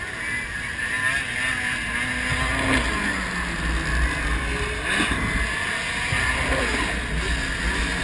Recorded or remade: recorded